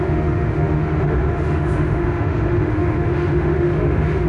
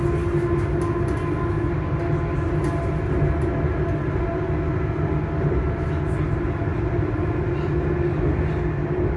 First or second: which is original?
second